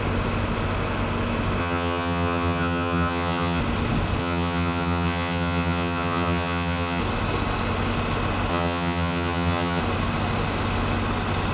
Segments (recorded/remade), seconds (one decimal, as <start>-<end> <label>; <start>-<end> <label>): 0.0-1.6 recorded; 1.6-3.6 remade; 3.6-4.2 recorded; 4.2-7.0 remade; 7.0-8.5 recorded; 8.5-9.8 remade; 9.8-11.5 recorded